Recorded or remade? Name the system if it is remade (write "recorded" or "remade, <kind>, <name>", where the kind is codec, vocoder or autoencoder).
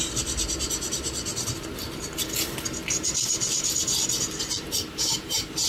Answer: recorded